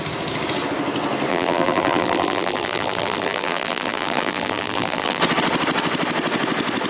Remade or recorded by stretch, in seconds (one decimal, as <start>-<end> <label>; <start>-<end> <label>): 0.0-1.3 recorded; 1.3-5.2 remade; 5.2-6.9 recorded